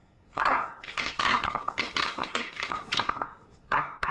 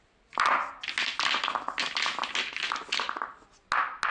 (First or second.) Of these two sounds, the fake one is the first